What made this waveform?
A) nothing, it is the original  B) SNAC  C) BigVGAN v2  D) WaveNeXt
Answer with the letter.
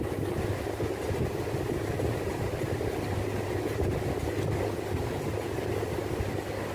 A